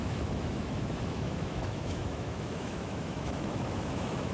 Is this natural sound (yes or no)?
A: no